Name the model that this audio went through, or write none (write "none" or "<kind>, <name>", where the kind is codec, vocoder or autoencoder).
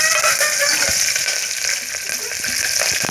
none